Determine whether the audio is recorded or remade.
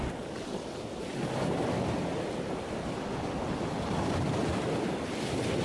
recorded